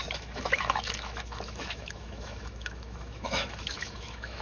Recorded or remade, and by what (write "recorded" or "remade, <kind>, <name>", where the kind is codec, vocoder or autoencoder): remade, autoencoder, DAC-VAE